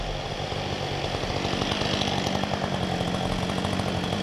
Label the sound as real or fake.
real